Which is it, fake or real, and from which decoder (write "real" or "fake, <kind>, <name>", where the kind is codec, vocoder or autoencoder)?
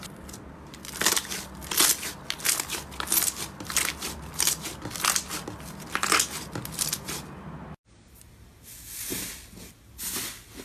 real